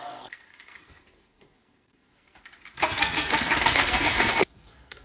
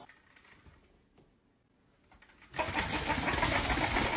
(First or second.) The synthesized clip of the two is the first